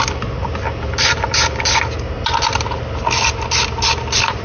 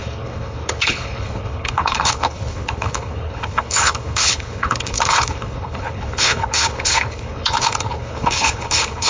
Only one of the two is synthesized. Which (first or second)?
second